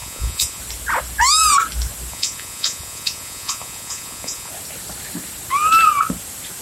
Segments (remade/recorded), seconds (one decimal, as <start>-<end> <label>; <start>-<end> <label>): 0.0-0.6 remade; 0.6-2.1 recorded; 2.1-4.5 remade; 4.5-6.6 recorded